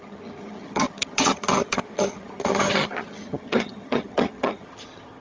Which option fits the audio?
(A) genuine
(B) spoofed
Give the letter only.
B